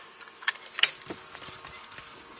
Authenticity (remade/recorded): recorded